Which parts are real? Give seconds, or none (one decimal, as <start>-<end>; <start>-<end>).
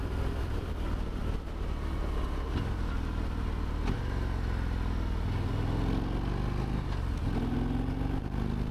0.0-8.7